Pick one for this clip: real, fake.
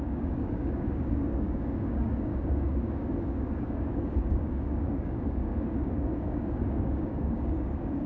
fake